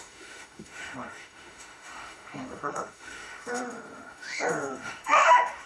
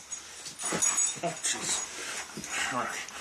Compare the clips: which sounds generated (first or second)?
first